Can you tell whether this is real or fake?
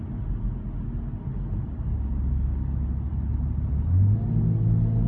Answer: real